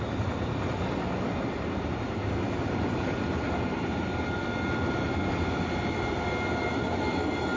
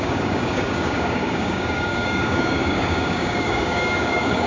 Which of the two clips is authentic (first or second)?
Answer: first